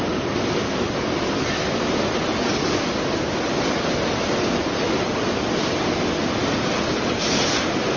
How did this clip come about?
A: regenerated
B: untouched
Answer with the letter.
B